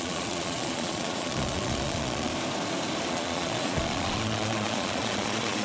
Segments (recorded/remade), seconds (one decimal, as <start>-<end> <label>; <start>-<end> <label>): 0.0-2.3 remade; 2.3-3.1 recorded; 3.1-5.6 remade